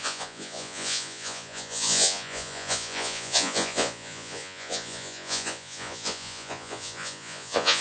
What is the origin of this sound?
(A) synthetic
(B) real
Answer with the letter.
A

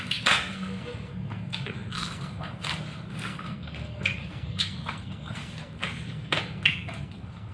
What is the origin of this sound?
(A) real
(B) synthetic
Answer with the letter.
B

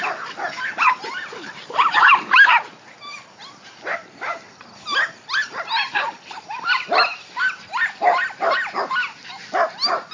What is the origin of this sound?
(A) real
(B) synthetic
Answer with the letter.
A